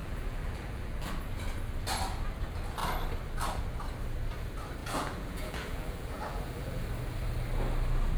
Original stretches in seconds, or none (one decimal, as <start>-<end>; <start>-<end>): 1.1-4.8; 6.8-8.2